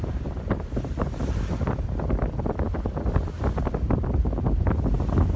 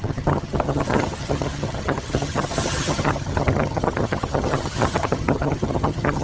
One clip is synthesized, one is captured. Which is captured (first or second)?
first